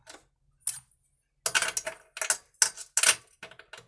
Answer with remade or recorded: recorded